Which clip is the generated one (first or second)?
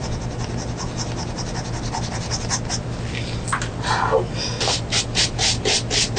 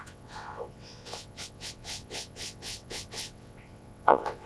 second